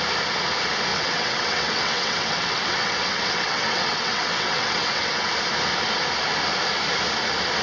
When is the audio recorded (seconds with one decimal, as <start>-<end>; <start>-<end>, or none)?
0.0-0.9; 5.3-7.6